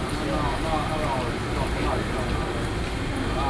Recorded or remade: recorded